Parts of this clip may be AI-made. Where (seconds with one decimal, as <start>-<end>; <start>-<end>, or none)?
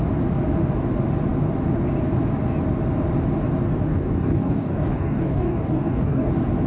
3.9-6.3